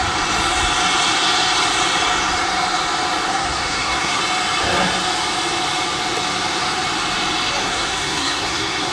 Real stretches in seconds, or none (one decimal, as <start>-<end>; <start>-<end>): 0.0-3.3; 4.2-7.6